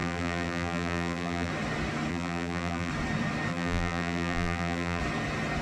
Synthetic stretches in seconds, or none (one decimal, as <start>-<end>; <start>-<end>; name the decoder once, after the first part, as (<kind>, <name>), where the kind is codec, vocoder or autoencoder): 0.0-1.5 (vocoder, BigVGAN v2); 2.1-2.9; 3.5-5.0